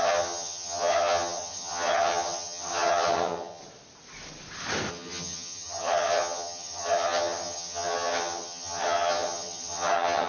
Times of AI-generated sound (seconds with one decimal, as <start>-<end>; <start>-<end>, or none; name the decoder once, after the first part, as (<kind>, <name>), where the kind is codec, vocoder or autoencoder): 0.0-3.6 (vocoder, HiFi-GAN); 4.9-10.3